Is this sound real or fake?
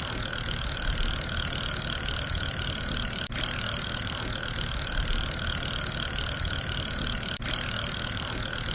real